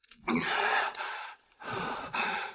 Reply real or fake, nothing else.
fake